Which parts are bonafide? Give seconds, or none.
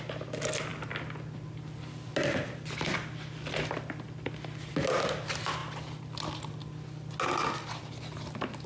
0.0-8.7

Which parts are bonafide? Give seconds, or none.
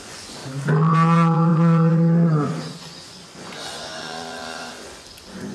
0.4-0.9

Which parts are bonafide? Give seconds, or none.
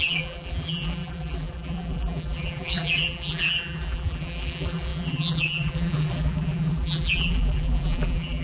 none